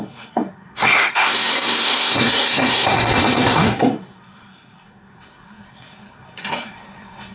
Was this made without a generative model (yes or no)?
no